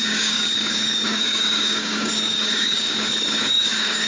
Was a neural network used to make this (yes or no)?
yes